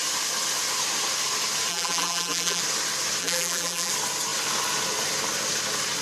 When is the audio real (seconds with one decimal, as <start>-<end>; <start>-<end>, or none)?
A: 0.0-1.7; 2.6-3.2; 3.9-6.0